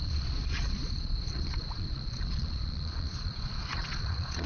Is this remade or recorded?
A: remade